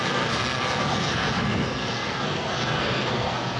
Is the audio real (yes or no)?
no